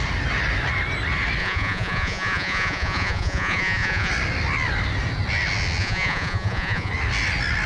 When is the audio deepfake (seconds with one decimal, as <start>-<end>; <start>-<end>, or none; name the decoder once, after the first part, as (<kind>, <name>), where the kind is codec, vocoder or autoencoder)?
1.4-4.1 (vocoder, Vocos); 5.8-6.9

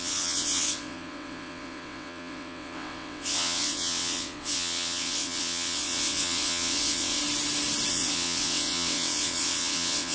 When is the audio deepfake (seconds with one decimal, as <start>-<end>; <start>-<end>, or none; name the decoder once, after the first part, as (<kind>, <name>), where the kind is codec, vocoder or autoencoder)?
0.0-7.2 (vocoder, WaveNeXt); 7.9-10.1

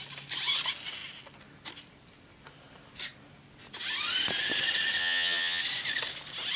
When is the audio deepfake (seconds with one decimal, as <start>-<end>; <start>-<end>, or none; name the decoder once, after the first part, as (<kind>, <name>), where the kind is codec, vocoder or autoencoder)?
5.0-5.6 (vocoder, HiFi-GAN)